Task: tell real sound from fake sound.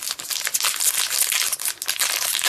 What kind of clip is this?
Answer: real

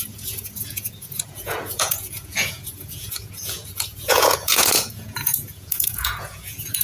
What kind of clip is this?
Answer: fake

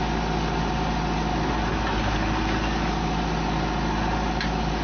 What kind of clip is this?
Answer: real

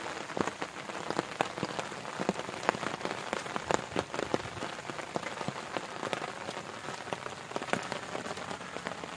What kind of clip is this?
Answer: real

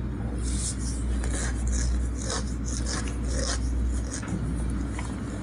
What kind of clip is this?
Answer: real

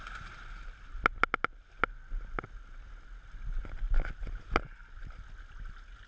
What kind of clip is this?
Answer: real